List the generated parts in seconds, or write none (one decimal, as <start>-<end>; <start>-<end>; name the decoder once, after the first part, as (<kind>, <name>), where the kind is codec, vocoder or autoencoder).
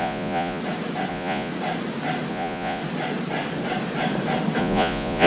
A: 0.0-0.6 (vocoder, Vocos); 1.1-1.5; 2.3-2.8; 4.6-5.3